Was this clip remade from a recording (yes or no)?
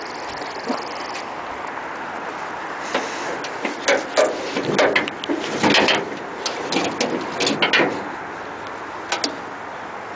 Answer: no